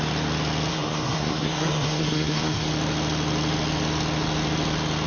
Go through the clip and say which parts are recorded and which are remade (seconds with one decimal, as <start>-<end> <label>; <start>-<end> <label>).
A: 0.0-0.7 recorded; 0.7-2.7 remade; 2.7-5.1 recorded